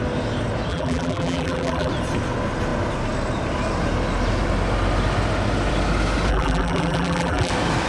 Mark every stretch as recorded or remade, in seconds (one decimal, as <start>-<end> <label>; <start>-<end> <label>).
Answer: 0.0-0.7 recorded; 0.7-1.9 remade; 1.9-6.3 recorded; 6.3-7.5 remade; 7.5-7.9 recorded